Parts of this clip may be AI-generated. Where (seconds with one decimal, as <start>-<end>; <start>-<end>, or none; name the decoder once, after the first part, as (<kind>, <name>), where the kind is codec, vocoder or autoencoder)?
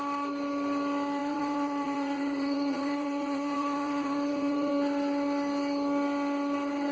1.2-4.7 (vocoder, Vocos)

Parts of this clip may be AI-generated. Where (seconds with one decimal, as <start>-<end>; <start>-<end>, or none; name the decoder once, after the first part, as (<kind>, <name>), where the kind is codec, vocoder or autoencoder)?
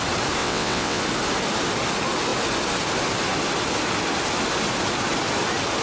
0.4-1.0 (vocoder, WaveNeXt)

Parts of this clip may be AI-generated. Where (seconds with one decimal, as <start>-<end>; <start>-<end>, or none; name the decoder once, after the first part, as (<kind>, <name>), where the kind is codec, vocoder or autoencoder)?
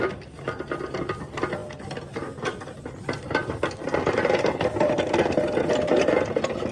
3.9-5.0 (vocoder, BigVGAN v2)